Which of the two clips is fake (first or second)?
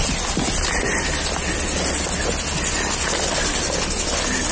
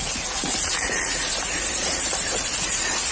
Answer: second